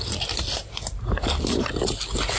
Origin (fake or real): real